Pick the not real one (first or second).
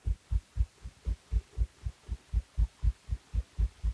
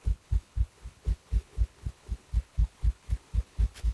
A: second